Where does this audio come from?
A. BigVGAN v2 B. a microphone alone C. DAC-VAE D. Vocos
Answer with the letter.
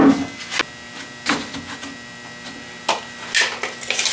B